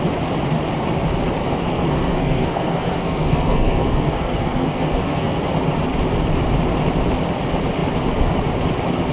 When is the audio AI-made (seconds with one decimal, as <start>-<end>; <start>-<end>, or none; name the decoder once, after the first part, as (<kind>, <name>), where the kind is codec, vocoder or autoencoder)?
1.4-5.4 (codec, SNAC)